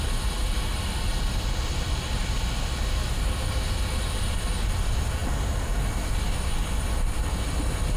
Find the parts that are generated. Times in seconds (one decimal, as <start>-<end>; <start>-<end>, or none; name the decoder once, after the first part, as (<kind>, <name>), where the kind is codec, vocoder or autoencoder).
none